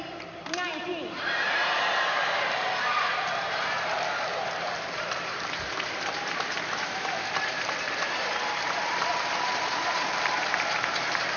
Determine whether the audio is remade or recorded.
remade